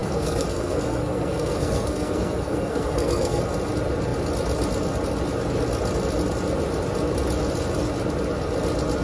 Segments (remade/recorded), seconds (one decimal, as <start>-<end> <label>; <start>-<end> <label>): 0.0-3.4 remade; 3.4-9.0 recorded